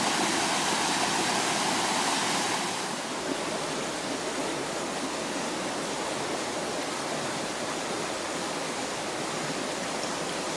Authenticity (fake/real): real